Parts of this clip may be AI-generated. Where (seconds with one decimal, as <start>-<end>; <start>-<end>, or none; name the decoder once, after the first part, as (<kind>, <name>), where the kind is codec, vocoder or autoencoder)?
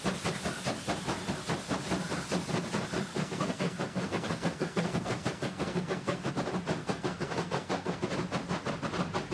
3.1-6.3 (codec, SNAC); 6.8-8.1